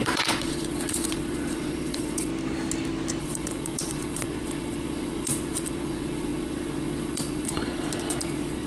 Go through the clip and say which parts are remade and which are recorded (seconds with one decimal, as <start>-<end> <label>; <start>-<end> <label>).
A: 0.0-2.3 remade; 2.3-3.2 recorded; 3.2-8.7 remade